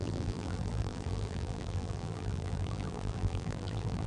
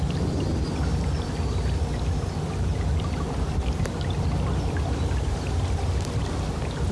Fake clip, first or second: first